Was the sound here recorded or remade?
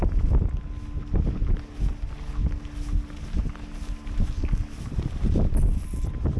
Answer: recorded